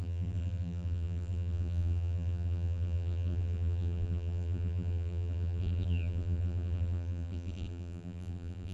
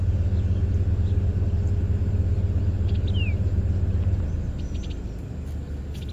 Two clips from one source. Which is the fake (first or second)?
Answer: first